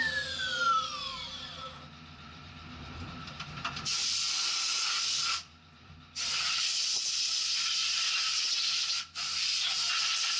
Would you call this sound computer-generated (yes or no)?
yes